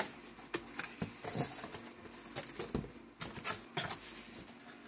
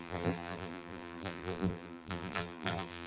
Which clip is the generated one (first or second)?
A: second